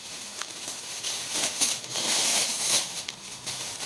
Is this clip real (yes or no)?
no